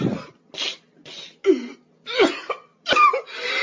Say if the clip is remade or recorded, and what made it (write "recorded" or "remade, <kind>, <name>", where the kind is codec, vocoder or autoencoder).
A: recorded